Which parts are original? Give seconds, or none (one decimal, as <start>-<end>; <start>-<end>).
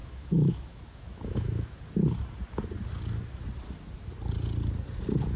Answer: 1.8-5.4